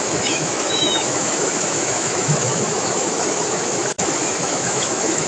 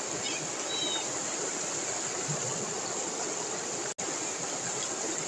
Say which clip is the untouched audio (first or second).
second